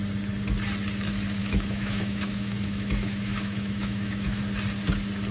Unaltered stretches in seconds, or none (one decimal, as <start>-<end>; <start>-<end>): 0.0-1.4; 4.4-5.3